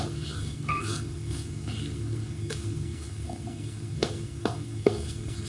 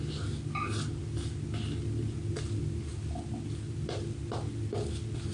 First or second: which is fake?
first